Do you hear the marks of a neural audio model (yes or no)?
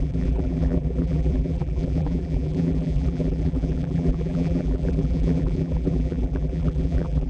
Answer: yes